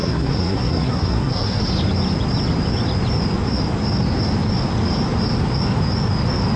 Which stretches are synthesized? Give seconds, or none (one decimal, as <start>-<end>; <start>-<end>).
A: 0.0-1.6